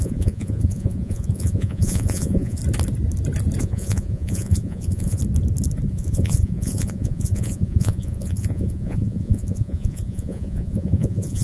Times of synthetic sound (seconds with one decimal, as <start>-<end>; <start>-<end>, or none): 0.0-2.6; 3.6-5.2; 5.9-11.4